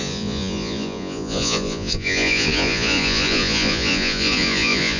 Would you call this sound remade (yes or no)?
yes